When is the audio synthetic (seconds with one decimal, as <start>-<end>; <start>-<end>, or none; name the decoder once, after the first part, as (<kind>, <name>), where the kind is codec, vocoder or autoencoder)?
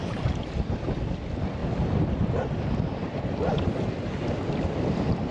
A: 0.0-0.9 (vocoder, BigVGAN v2); 3.0-3.9